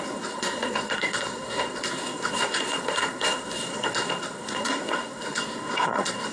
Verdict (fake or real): fake